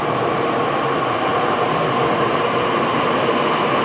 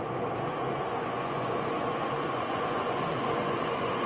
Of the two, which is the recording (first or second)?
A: first